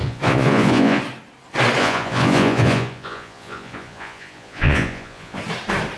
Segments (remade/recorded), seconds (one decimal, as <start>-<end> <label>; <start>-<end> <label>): 0.0-1.0 remade; 1.0-1.8 recorded; 1.8-5.4 remade; 5.4-6.0 recorded